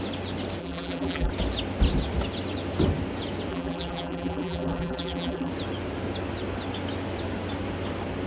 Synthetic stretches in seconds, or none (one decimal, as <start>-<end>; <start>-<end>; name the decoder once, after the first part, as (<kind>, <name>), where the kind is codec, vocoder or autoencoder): 0.6-1.3 (vocoder, BigVGAN v2); 3.5-5.5